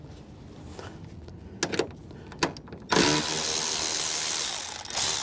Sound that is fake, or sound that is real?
real